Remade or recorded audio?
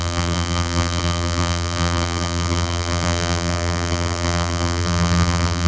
remade